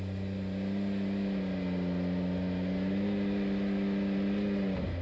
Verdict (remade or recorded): recorded